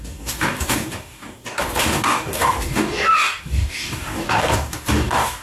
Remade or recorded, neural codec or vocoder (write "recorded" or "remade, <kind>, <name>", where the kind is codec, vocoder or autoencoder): remade, codec, DAC